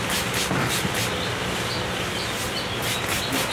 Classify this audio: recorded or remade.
recorded